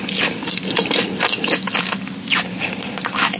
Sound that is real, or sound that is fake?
real